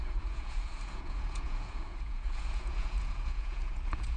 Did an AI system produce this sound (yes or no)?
yes